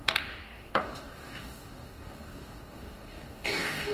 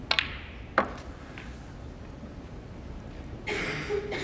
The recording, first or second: second